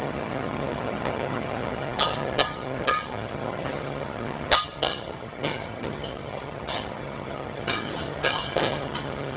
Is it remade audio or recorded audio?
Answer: remade